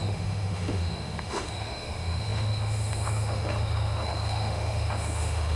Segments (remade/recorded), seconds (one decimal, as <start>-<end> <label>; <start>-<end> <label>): 0.0-5.6 remade